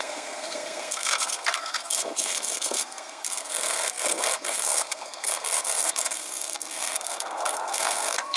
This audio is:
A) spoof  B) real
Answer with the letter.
A